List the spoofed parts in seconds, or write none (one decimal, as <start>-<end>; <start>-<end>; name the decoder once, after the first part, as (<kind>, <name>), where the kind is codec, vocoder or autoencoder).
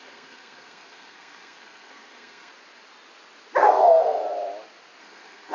0.0-2.5 (codec, SNAC); 3.6-4.2; 5.0-5.5